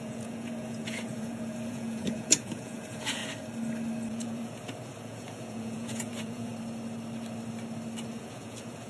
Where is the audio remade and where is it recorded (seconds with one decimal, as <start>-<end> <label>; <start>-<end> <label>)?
0.0-3.2 remade; 3.2-4.1 recorded; 4.1-6.5 remade; 6.5-8.1 recorded; 8.1-8.9 remade